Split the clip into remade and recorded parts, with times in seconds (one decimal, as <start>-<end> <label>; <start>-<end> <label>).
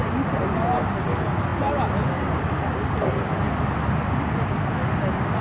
0.0-5.4 recorded